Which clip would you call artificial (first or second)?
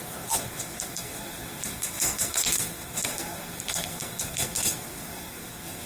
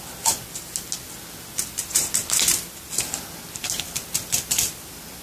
first